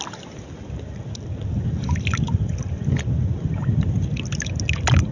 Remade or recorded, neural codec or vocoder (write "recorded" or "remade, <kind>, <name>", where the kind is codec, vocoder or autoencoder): recorded